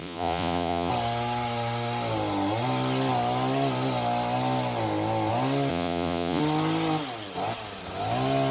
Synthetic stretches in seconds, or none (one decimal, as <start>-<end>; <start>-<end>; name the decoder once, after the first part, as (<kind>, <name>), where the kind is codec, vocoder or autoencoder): 0.0-0.9 (vocoder, Vocos); 5.7-6.4